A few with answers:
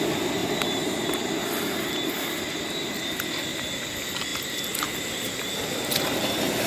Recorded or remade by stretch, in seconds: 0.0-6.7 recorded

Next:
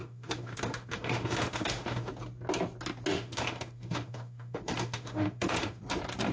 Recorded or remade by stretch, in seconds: 0.0-2.1 remade; 2.1-3.1 recorded; 3.1-5.8 remade; 5.8-6.3 recorded